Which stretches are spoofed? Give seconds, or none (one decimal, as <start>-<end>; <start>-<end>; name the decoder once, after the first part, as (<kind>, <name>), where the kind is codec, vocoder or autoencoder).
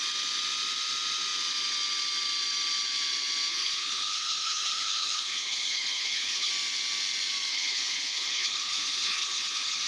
3.5-6.5 (codec, HILCodec); 7.5-9.9